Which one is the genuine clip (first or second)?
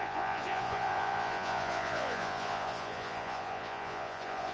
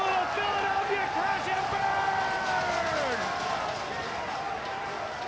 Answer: second